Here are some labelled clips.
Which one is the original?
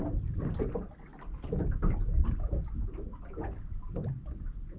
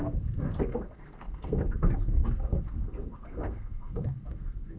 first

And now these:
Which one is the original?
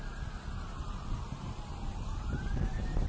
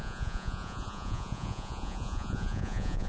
first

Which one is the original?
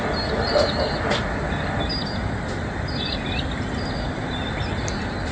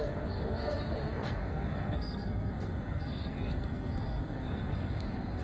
first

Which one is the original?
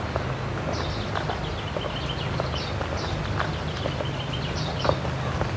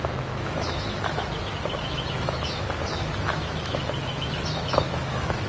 first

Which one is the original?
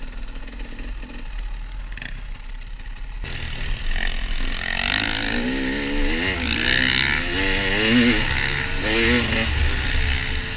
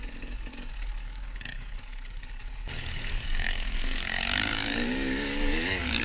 first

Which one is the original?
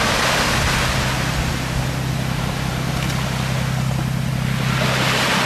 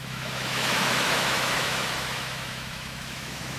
first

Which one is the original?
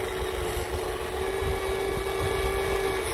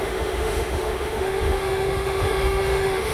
first